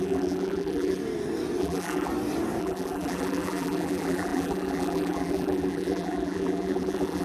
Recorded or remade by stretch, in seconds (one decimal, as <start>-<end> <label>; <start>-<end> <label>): 0.0-1.0 remade; 1.0-1.6 recorded; 1.6-2.1 remade; 2.1-2.6 recorded; 2.6-7.2 remade